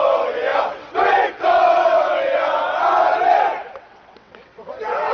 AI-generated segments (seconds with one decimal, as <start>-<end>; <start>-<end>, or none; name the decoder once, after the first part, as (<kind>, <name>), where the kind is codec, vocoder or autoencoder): 0.0-5.1 (vocoder, WaveNeXt)